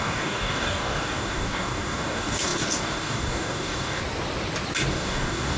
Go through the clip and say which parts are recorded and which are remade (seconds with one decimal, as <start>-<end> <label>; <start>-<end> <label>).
0.0-4.0 remade; 4.0-4.9 recorded; 4.9-5.6 remade